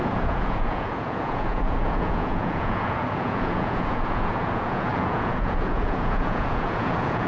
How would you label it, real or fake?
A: fake